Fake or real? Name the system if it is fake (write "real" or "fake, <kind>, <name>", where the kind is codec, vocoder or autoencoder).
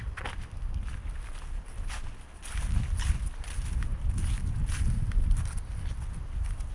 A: real